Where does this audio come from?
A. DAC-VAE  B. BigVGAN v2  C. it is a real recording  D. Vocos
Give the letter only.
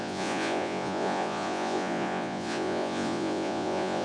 D